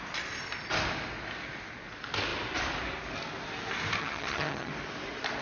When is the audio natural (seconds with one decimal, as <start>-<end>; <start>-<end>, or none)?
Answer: 0.0-4.0; 4.7-5.4